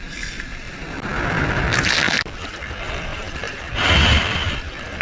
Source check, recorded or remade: remade